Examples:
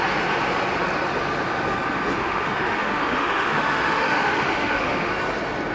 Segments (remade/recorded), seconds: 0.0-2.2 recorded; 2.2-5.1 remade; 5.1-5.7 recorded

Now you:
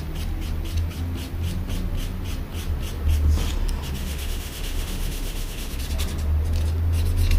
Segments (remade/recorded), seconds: 0.0-4.0 recorded; 4.0-5.8 remade; 5.8-7.4 recorded

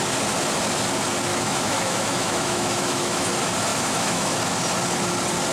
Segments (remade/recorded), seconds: 0.0-1.3 recorded; 1.3-3.3 remade; 3.3-3.7 recorded; 3.7-4.4 remade; 4.4-5.5 recorded

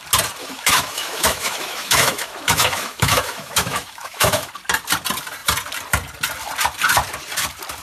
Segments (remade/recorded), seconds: 0.0-0.4 recorded; 0.4-4.5 remade; 4.5-7.8 recorded